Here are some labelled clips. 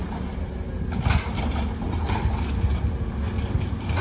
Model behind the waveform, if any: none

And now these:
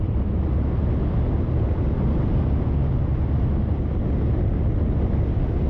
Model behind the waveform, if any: none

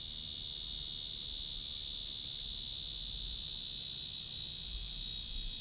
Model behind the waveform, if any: none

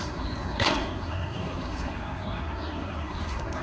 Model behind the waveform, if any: codec, SNAC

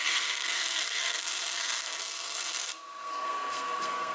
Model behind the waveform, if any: codec, SNAC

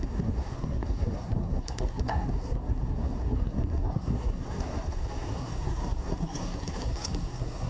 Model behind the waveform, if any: codec, SNAC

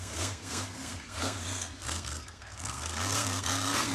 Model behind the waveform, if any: codec, SNAC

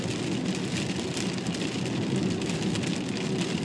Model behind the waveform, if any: none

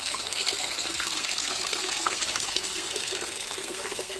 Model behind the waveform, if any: codec, SNAC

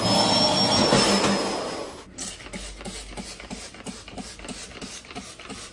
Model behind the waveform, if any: none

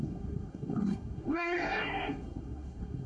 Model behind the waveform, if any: codec, SNAC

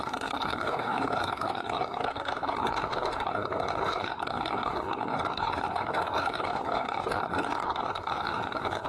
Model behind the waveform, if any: codec, SNAC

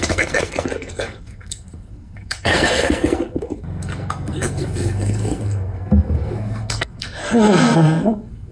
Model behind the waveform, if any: codec, SNAC